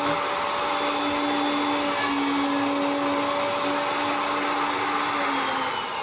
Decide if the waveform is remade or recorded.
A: recorded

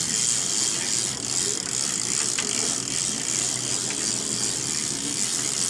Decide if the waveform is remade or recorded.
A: recorded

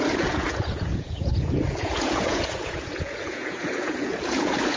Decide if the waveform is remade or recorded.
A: remade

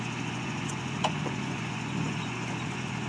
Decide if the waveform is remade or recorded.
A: remade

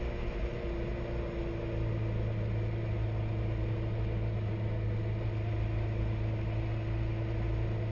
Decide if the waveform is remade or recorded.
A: recorded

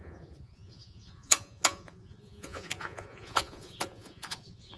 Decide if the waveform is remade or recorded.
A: remade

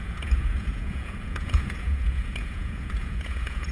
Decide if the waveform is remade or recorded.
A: remade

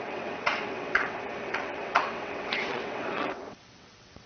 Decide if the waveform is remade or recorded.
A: remade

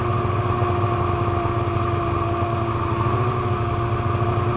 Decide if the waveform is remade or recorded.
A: recorded